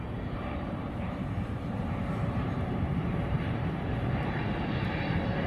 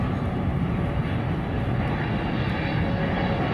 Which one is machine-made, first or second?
first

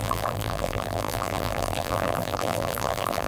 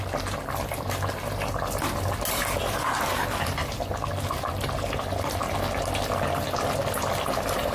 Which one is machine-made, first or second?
first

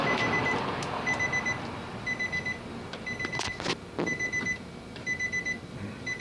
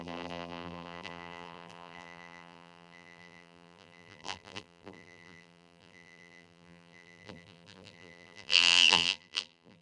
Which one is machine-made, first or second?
second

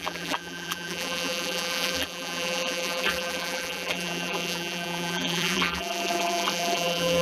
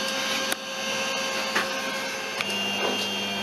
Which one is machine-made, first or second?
first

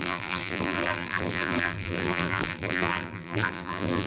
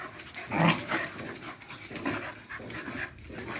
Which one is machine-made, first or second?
first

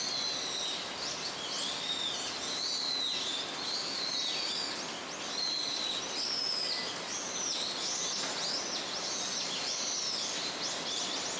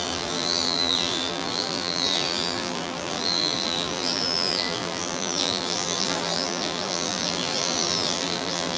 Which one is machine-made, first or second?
second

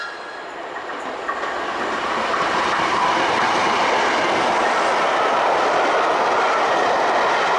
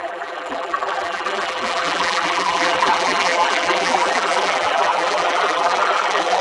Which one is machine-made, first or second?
second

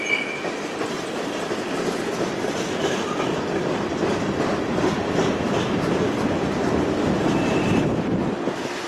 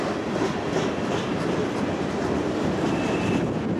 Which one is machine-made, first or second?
first